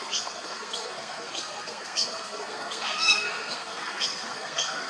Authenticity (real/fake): fake